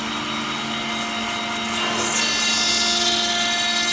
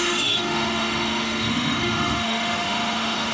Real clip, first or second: first